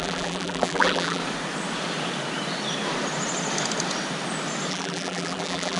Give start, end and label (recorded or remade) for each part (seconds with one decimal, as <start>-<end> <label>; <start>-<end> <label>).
0.0-1.2 remade; 1.2-4.7 recorded; 4.7-5.8 remade